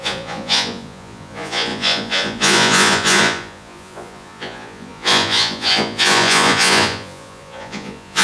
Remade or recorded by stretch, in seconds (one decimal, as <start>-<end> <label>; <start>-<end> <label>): 0.0-8.2 remade